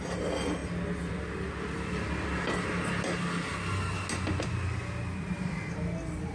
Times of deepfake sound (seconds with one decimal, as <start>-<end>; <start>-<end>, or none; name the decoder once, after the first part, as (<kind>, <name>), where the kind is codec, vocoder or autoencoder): none